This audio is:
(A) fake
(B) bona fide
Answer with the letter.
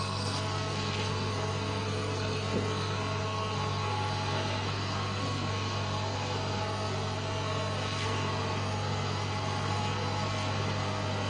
A